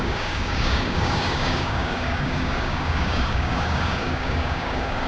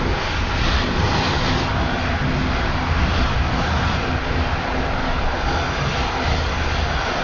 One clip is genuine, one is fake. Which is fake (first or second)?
first